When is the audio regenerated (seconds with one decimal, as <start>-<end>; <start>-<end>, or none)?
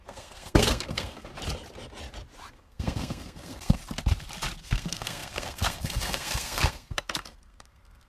0.0-1.3; 2.5-3.8; 4.6-8.1